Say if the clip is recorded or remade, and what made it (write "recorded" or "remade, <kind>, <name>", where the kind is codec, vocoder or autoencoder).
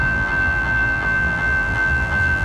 remade, vocoder, BigVGAN v2